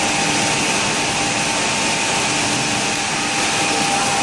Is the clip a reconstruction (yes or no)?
no